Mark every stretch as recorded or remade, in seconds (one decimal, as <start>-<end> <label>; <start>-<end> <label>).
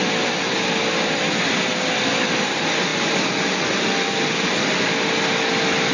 0.0-5.9 recorded